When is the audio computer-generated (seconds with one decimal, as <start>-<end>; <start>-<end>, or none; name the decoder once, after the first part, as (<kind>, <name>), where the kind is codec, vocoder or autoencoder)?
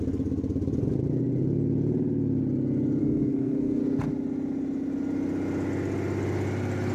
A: 3.0-3.8 (codec, SNAC)